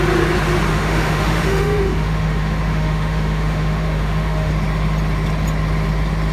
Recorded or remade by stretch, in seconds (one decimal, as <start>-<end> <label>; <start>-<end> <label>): 0.0-0.7 recorded; 0.7-4.5 remade; 4.5-6.3 recorded